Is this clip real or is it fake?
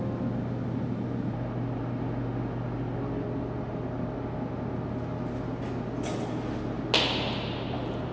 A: real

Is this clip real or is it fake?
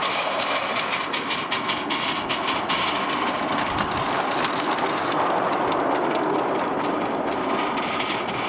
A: real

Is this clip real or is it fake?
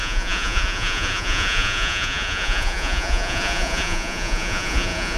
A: fake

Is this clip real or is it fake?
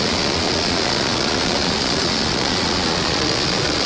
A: fake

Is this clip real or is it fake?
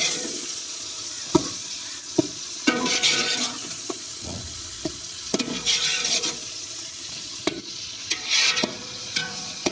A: fake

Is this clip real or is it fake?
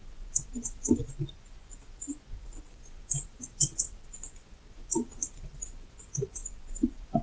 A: fake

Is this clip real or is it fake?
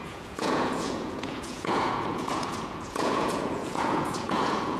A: fake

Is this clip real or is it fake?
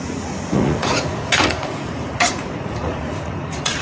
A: fake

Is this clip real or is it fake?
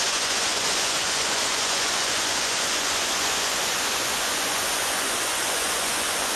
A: fake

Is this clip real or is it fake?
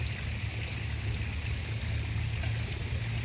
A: real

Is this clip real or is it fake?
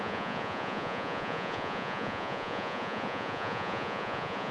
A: fake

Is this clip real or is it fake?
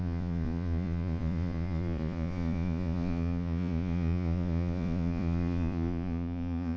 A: fake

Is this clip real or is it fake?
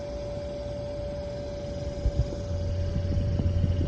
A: real